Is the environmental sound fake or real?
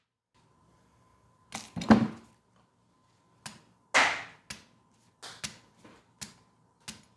real